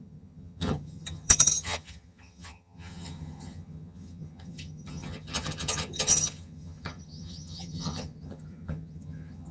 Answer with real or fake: fake